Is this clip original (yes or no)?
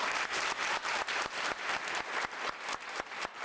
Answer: yes